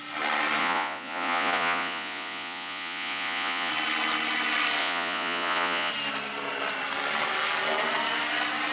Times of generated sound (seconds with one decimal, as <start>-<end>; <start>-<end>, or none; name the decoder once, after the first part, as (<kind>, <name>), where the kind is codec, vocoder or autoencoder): 0.6-3.7 (vocoder, Vocos); 4.8-5.9